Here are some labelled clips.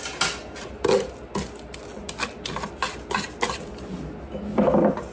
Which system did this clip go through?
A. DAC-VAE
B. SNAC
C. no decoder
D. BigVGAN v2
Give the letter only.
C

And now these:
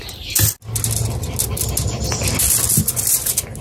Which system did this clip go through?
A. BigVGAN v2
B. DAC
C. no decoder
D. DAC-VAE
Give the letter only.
C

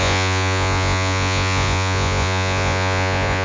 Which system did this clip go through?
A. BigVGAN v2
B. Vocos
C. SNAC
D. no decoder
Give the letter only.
B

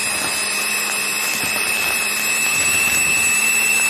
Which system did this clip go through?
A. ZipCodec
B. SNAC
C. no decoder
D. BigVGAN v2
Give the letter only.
D